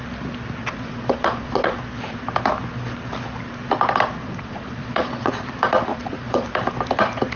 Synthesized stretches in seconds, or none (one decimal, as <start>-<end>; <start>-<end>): 0.6-1.8; 4.2-5.3; 5.9-6.5